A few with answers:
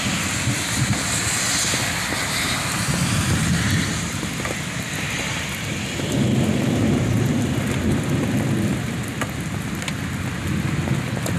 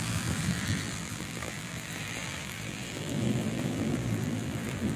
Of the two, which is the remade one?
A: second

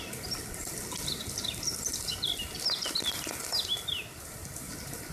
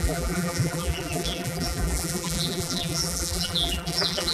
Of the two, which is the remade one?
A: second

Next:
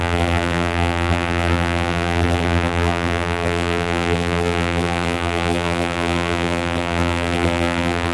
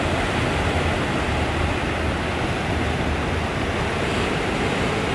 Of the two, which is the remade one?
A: first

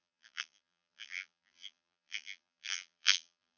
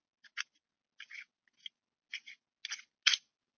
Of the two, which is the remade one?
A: first